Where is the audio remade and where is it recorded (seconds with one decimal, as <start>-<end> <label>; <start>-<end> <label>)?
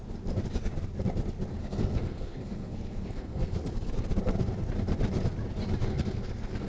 0.0-1.6 recorded; 1.6-4.1 remade; 4.1-5.8 recorded; 5.8-6.7 remade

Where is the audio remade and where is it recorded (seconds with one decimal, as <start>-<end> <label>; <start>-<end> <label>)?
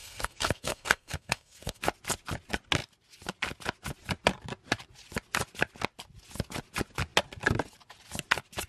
0.0-1.8 remade; 1.8-8.7 recorded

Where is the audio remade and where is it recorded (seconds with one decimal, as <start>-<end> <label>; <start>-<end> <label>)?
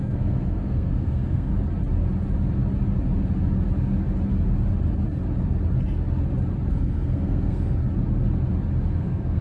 0.0-1.5 remade; 1.5-6.7 recorded; 6.7-7.8 remade; 7.8-8.9 recorded; 8.9-9.4 remade